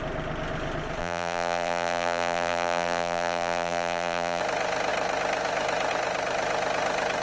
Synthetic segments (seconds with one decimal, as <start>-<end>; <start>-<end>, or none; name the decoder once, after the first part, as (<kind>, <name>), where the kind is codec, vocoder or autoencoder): 1.0-4.4 (vocoder, BigVGAN v2)